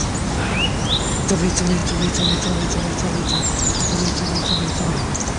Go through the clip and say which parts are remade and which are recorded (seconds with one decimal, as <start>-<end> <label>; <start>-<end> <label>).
0.0-5.4 recorded